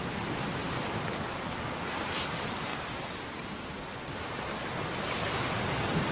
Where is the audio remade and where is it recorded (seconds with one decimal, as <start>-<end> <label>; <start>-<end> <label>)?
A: 0.0-6.1 recorded